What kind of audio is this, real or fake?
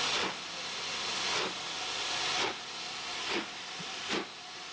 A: real